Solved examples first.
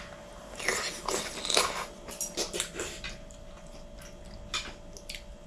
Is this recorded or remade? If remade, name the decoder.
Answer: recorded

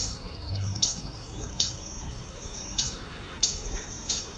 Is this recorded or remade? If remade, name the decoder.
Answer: remade, codec, SNAC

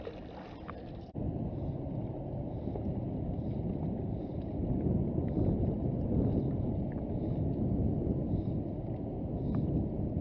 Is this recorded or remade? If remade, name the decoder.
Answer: recorded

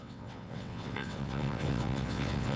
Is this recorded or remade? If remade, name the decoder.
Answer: remade, vocoder, WaveNeXt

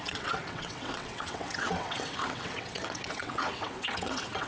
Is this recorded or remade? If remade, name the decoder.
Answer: remade, vocoder, WaveNeXt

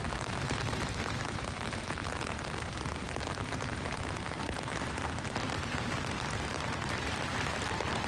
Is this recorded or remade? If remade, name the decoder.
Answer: remade, vocoder, BigVGAN v2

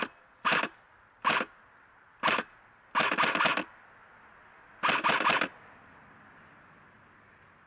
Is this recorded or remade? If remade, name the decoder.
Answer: recorded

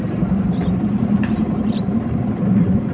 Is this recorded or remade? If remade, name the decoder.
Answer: recorded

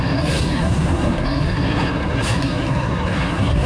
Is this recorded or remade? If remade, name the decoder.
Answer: remade, codec, SNAC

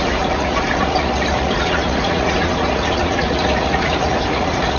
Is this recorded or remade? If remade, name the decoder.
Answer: remade, vocoder, Vocos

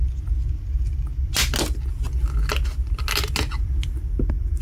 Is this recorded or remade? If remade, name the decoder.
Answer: recorded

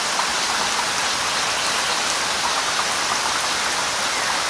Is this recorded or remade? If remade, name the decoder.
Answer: recorded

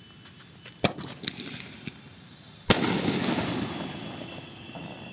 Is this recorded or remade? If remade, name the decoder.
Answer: recorded